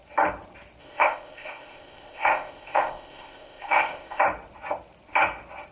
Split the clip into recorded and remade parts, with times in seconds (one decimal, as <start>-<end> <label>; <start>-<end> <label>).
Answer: 0.0-0.8 recorded; 0.8-4.2 remade; 4.2-5.7 recorded